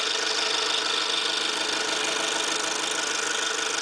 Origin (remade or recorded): recorded